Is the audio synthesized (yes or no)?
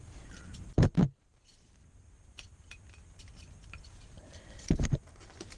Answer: yes